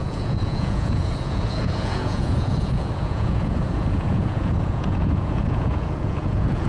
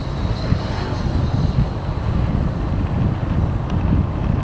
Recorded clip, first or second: second